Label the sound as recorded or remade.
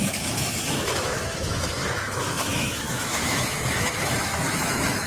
remade